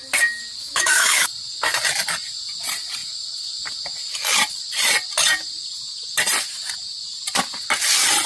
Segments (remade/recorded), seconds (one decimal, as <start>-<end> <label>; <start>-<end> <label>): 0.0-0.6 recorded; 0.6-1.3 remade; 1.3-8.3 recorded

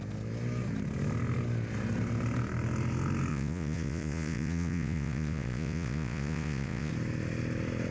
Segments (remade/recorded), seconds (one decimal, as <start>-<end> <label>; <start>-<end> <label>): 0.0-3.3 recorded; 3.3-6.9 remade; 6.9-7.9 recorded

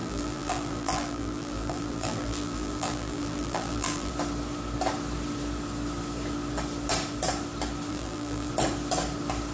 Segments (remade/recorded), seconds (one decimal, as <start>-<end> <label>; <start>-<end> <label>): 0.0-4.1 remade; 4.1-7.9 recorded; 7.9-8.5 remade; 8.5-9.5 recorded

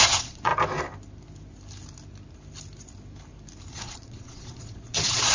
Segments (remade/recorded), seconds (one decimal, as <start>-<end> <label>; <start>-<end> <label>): 0.0-0.5 remade; 0.5-3.7 recorded; 3.7-5.3 remade